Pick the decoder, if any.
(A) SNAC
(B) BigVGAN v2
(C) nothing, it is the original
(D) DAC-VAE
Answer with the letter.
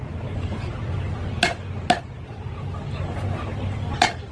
C